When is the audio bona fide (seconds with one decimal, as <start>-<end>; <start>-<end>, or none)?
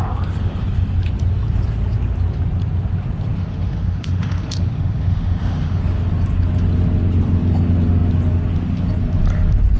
0.0-3.4; 5.8-9.8